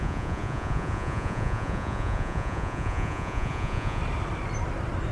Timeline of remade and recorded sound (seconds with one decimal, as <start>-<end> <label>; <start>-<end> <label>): 0.0-4.0 remade; 4.0-5.1 recorded